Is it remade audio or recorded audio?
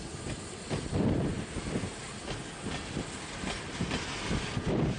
recorded